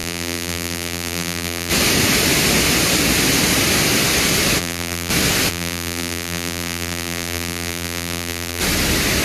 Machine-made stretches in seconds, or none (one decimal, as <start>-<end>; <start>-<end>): 0.0-1.7; 4.6-5.1; 5.5-8.6